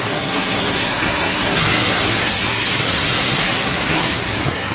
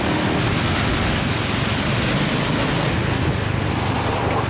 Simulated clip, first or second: first